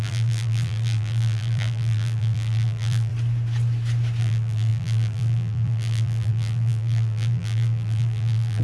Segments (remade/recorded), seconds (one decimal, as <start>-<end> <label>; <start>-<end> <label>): 0.0-3.1 remade; 3.1-4.2 recorded; 4.2-8.6 remade